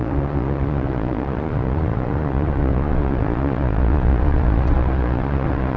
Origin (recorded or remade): remade